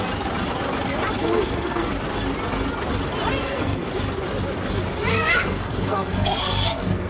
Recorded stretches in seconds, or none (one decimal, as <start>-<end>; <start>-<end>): 0.0-1.2; 1.9-3.4; 3.9-5.1